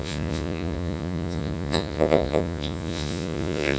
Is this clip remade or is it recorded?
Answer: remade